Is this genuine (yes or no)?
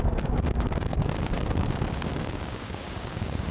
no